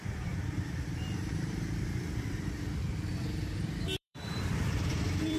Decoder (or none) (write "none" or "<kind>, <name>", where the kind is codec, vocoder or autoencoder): vocoder, BigVGAN v2